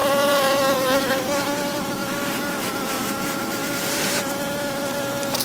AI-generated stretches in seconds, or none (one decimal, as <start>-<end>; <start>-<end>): 0.0-1.0; 3.6-4.2